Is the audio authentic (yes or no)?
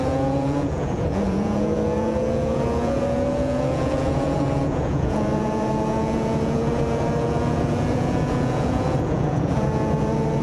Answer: no